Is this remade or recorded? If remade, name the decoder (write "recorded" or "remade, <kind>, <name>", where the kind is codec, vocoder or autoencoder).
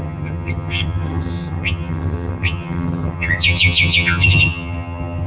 remade, vocoder, HiFi-GAN